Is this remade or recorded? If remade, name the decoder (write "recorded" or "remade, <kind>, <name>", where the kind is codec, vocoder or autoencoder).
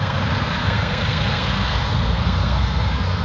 remade, codec, SNAC